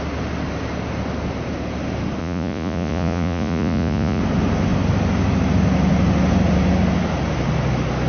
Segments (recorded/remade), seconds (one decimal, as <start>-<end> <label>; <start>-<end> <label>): 0.0-2.2 recorded; 2.2-4.2 remade; 4.2-8.1 recorded